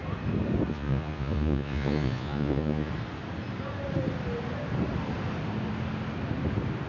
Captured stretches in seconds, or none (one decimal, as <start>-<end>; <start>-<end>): 0.0-0.7; 2.9-6.9